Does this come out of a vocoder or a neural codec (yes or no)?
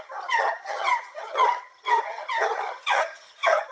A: yes